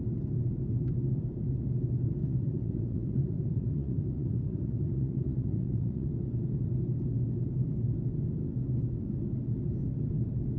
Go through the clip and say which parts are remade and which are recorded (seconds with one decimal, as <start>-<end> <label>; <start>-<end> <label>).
0.0-2.2 recorded; 2.2-6.1 remade; 6.1-10.6 recorded